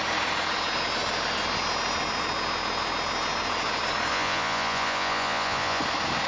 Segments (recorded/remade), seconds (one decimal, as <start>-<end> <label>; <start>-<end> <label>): 0.0-4.1 recorded; 4.1-5.8 remade; 5.8-6.3 recorded